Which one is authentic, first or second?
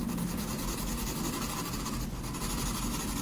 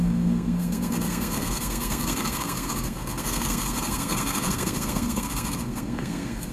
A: first